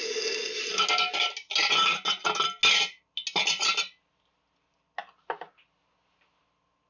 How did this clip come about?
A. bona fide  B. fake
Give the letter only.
A